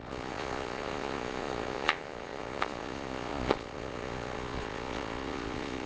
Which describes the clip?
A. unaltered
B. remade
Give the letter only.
B